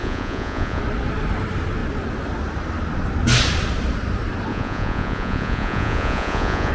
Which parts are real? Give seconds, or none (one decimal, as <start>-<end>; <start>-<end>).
0.8-4.5